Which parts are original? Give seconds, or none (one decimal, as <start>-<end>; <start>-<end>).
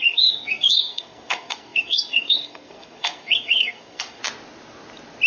4.2-5.3